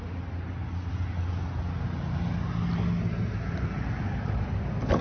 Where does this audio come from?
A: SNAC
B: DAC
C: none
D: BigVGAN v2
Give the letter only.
C